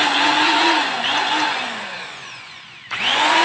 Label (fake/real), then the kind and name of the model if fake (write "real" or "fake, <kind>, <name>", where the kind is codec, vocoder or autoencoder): fake, vocoder, Vocos